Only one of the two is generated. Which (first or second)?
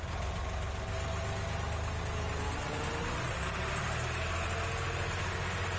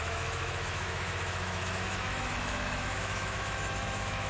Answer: second